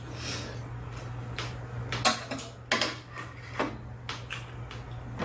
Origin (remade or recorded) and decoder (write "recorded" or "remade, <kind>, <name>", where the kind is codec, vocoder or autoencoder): recorded